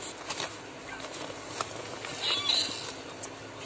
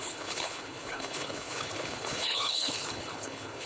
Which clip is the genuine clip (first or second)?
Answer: first